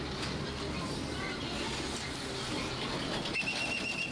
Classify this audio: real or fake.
real